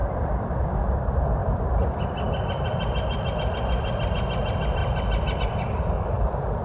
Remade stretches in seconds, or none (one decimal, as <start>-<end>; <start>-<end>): 0.0-1.4; 3.3-4.8; 5.4-6.6